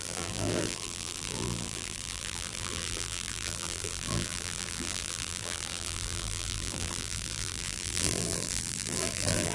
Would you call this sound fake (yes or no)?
yes